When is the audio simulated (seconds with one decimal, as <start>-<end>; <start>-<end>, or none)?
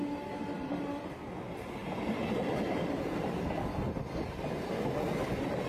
none